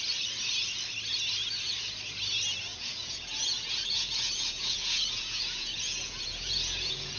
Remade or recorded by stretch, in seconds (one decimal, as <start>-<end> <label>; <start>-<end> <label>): 0.0-2.7 recorded; 2.7-7.2 remade